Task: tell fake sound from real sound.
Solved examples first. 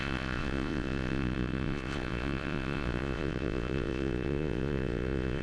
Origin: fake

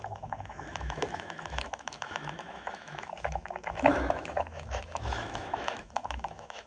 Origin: fake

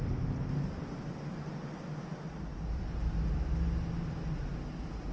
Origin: real